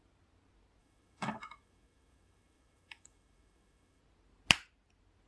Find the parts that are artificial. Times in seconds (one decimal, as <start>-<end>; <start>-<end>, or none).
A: 0.8-4.0